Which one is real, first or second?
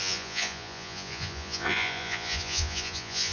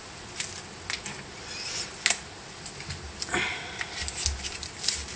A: second